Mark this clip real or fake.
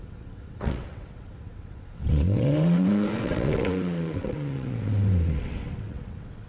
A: fake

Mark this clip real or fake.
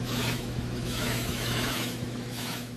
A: fake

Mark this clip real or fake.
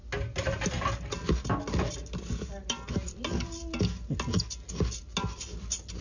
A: real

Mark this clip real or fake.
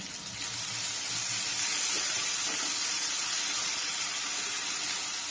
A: real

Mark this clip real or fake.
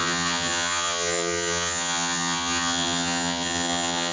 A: fake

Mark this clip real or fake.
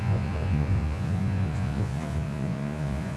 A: fake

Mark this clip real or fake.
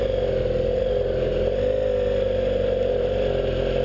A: real